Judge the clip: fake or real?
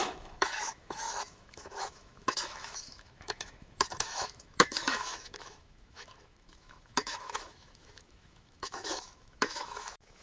fake